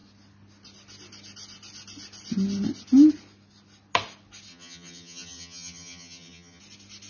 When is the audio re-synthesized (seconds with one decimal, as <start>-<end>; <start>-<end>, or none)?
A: 4.5-6.6